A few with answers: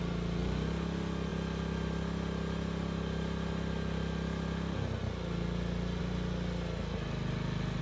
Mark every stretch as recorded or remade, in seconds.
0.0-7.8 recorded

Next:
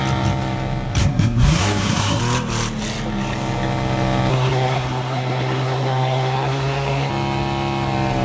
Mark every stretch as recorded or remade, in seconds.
0.0-1.0 recorded; 1.0-2.2 remade; 2.2-4.3 recorded; 4.3-7.1 remade; 7.1-8.2 recorded

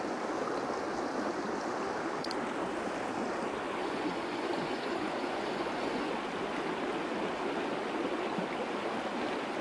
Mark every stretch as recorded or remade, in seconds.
0.0-3.8 recorded; 3.8-6.1 remade; 6.1-9.6 recorded

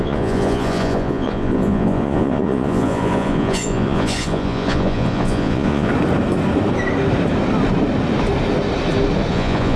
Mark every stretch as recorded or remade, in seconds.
0.0-5.9 remade; 5.9-9.3 recorded; 9.3-9.8 remade